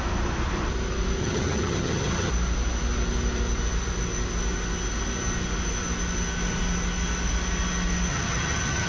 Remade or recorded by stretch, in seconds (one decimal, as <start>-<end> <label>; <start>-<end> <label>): 0.0-1.2 recorded; 1.2-2.3 remade; 2.3-8.1 recorded; 8.1-8.9 remade